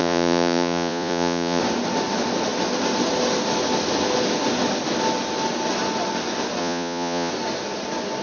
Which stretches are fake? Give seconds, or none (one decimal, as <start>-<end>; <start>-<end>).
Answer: 0.0-1.6; 6.6-7.3

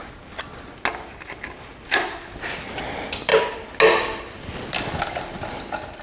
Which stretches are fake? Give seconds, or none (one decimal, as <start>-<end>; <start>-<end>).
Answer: none

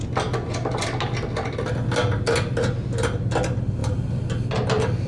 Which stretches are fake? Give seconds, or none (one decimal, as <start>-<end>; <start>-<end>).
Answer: none

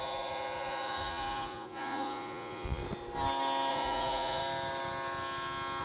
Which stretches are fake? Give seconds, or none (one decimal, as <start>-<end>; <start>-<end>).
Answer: 0.0-2.8; 3.7-4.4

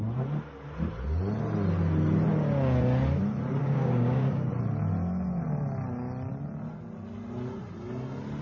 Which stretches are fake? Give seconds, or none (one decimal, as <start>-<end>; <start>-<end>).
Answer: 3.6-4.5

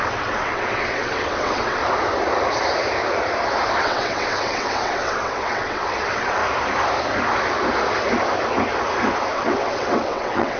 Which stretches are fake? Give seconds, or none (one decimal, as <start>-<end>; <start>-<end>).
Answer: 0.0-1.8; 3.8-6.4; 9.3-10.6

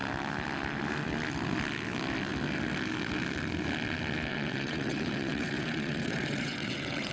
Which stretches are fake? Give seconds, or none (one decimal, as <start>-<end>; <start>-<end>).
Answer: 4.3-7.1

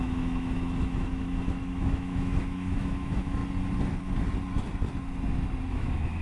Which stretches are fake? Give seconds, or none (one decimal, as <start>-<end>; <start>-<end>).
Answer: 0.0-3.4; 5.7-6.2